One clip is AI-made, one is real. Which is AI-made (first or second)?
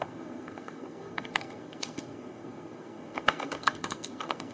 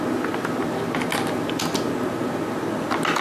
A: first